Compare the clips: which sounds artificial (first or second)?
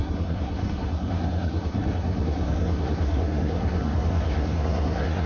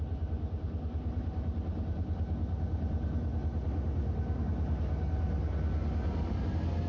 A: first